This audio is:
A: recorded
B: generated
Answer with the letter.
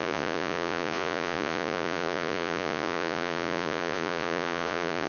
B